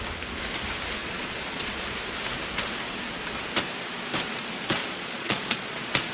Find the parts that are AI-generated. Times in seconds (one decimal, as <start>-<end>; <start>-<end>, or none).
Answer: 1.0-1.7; 4.8-6.1